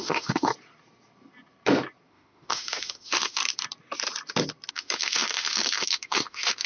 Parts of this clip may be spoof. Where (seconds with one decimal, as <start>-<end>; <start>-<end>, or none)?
0.0-0.5; 2.1-3.4; 4.7-6.7